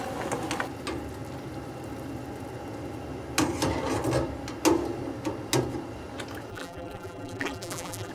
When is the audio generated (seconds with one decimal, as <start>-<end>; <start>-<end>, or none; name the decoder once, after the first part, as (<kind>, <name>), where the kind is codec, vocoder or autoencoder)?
6.5-8.1 (vocoder, BigVGAN v2)